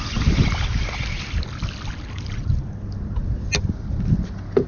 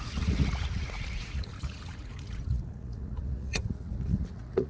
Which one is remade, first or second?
second